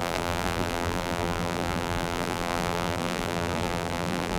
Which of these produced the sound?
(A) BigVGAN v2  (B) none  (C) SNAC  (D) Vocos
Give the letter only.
A